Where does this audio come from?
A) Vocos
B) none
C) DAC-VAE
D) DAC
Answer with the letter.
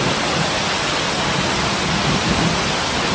B